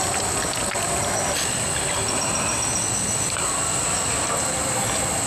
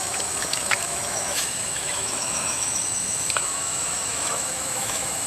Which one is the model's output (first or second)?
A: second